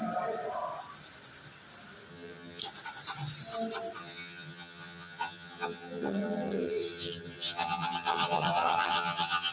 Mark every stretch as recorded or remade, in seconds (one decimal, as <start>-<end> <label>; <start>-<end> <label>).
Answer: 0.0-2.1 recorded; 2.1-2.6 remade; 2.6-4.0 recorded; 4.0-9.5 remade